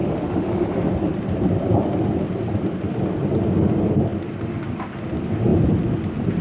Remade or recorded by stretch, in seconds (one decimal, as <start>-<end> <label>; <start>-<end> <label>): 0.0-0.8 remade; 0.8-6.4 recorded